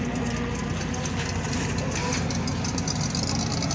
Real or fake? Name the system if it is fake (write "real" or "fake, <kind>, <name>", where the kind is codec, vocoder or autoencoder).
real